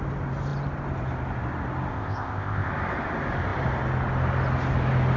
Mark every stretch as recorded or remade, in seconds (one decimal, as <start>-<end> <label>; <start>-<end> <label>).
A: 0.0-1.9 recorded; 1.9-2.7 remade; 2.7-5.2 recorded